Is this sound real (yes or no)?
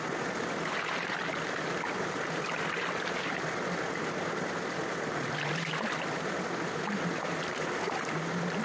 yes